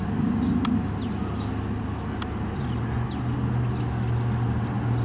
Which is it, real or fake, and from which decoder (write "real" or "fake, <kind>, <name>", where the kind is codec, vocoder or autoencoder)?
real